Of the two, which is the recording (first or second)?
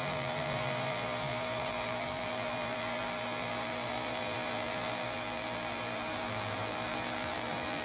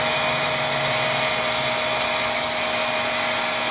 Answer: second